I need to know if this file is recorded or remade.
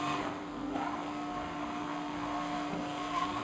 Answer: remade